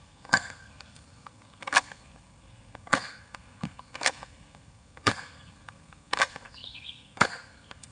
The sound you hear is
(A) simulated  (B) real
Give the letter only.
A